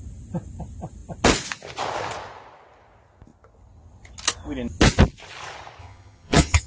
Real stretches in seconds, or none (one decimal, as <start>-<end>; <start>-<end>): 0.0-5.8